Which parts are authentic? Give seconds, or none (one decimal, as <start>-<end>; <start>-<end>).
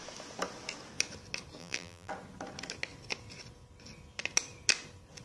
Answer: 0.0-1.6; 2.1-5.2